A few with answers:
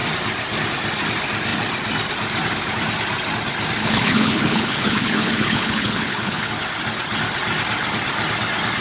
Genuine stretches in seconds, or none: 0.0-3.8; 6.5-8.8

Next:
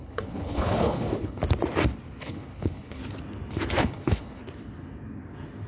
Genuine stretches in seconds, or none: 1.4-2.2; 3.0-3.8; 4.4-5.7

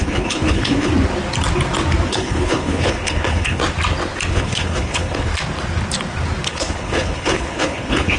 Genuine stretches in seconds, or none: 0.9-2.1; 3.6-4.3; 5.3-6.5

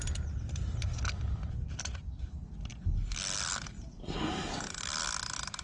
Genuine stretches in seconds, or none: 0.0-5.6

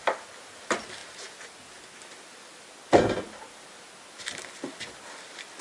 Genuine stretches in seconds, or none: 0.0-5.6

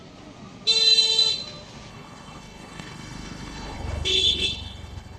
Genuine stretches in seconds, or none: 0.0-1.9

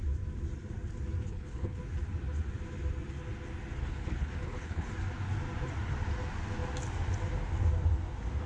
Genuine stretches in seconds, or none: 0.0-1.2; 1.8-3.8; 4.9-8.5

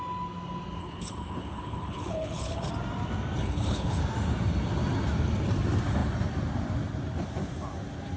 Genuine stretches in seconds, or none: 0.0-0.8; 2.7-3.4; 4.0-8.2